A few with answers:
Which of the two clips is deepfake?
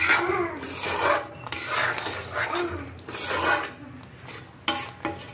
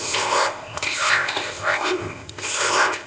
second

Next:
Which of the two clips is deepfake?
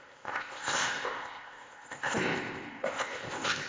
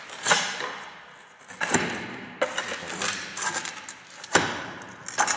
first